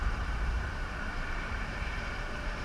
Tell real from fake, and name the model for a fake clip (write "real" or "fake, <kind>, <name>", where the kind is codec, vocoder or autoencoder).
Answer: fake, vocoder, BigVGAN v2